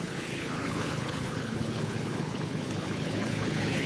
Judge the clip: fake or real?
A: fake